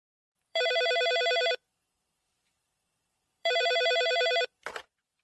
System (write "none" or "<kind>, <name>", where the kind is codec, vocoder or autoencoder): vocoder, BigVGAN v2